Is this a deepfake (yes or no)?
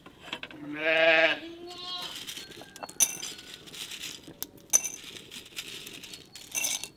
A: no